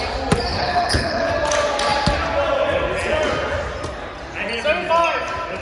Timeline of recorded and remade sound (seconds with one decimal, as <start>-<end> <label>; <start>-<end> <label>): 0.0-0.5 recorded; 0.5-1.3 remade; 1.3-5.6 recorded